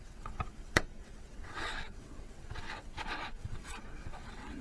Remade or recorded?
remade